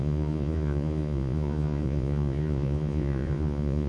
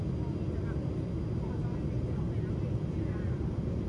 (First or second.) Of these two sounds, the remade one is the first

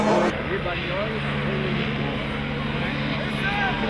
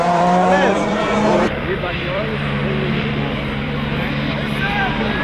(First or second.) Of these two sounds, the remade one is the second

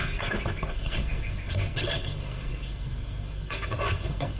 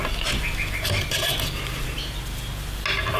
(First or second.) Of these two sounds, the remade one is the first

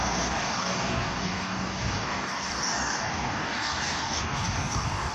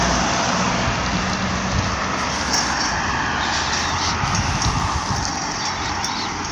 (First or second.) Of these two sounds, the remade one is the first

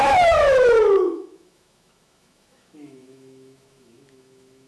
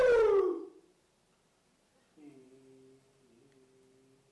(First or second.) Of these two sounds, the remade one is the first